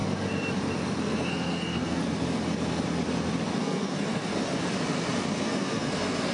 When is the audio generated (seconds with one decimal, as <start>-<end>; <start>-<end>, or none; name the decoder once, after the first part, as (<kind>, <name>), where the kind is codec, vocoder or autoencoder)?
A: 1.0-2.0 (codec, SNAC); 3.6-4.3; 5.4-6.3